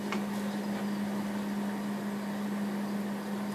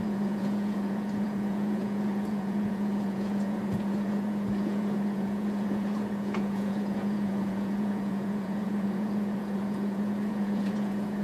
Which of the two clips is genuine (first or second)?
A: first